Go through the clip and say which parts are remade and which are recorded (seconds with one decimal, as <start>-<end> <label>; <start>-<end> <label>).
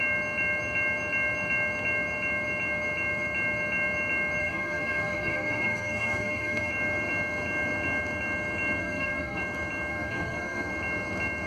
0.0-4.4 recorded; 4.4-6.7 remade; 6.7-8.8 recorded; 8.8-9.4 remade; 9.4-9.9 recorded; 9.9-10.7 remade; 10.7-11.5 recorded